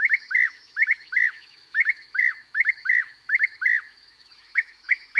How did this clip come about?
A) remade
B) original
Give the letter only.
A